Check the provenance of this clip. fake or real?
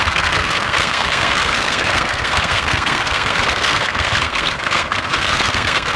fake